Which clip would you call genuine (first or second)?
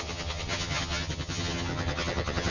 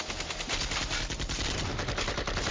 second